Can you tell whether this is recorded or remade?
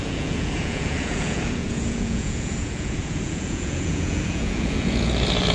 remade